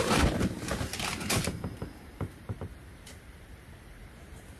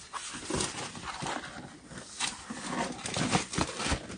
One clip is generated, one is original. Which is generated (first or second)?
first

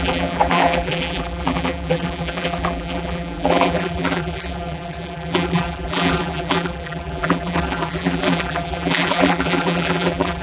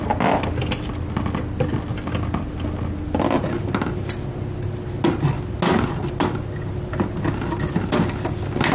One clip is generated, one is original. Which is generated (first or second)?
first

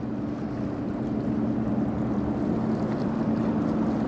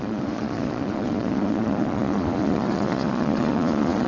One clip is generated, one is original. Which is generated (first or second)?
second